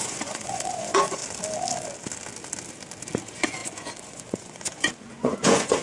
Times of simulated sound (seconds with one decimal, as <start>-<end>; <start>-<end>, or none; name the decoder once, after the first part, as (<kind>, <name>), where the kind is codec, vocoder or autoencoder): 0.0-1.2 (vocoder, Vocos); 3.2-5.8